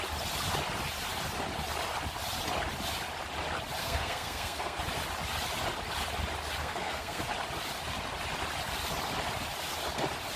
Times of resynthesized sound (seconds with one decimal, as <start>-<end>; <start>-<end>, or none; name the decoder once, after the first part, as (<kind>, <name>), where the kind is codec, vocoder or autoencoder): 3.8-4.8 (codec, SNAC); 6.6-7.2